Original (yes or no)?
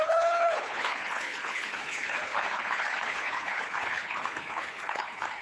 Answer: no